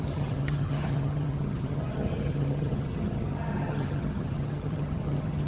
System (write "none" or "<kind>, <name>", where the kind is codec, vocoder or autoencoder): vocoder, HiFi-GAN